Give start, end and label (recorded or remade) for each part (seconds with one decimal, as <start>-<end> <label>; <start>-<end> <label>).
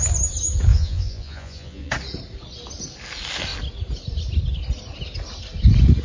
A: 0.0-0.7 recorded; 0.7-1.9 remade; 1.9-6.0 recorded